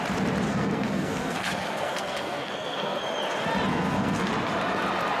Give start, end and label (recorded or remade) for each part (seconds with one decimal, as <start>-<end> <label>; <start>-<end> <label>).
0.0-0.5 recorded; 0.5-3.0 remade; 3.0-3.7 recorded; 3.7-4.3 remade; 4.3-5.2 recorded